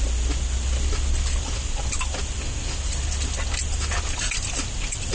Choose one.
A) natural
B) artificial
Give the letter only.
A